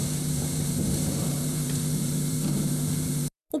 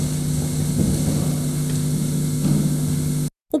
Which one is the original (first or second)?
second